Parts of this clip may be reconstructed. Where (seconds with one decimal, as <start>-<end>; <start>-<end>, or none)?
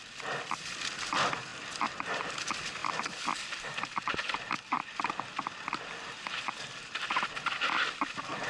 1.5-2.3; 2.8-6.6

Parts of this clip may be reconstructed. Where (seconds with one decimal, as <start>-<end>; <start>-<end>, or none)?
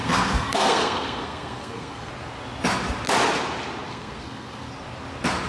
0.0-2.1; 3.9-4.7